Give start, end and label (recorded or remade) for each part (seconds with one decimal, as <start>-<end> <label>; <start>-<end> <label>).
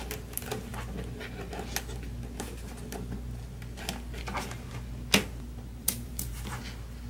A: 0.0-5.8 recorded; 5.8-6.6 remade; 6.6-7.1 recorded